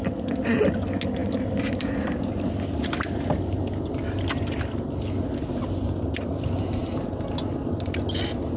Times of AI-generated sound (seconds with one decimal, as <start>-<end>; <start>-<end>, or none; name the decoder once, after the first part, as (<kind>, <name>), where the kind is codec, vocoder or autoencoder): 1.2-2.3 (vocoder, BigVGAN v2); 6.8-7.3